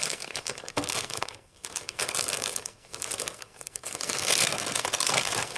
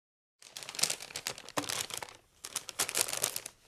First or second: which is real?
second